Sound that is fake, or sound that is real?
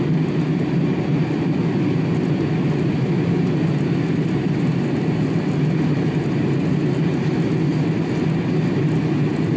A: real